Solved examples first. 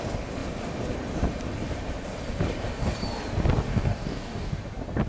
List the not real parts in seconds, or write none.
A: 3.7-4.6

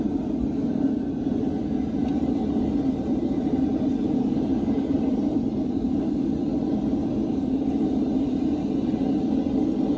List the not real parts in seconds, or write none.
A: 2.0-6.0